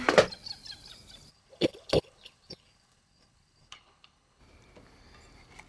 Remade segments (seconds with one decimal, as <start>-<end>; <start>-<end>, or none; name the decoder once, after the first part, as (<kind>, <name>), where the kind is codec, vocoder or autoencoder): 1.3-4.4 (codec, HILCodec)